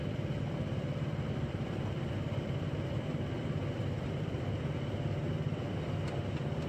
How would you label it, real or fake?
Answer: real